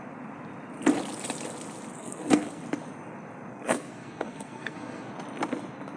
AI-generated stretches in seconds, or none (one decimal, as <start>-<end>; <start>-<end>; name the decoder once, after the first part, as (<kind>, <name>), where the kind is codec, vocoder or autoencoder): 2.0-2.6 (codec, SNAC); 3.5-5.1